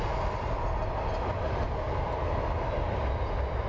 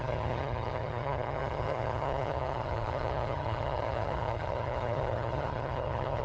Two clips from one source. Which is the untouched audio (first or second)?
first